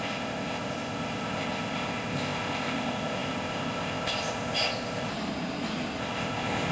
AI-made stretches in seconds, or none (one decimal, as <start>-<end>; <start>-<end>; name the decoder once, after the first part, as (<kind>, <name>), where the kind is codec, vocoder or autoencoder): 0.0-5.1 (codec, ZipCodec); 6.0-6.7